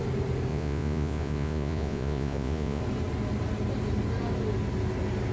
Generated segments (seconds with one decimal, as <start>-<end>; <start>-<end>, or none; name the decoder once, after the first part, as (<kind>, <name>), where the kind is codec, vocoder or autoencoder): 0.5-2.8 (vocoder, Vocos)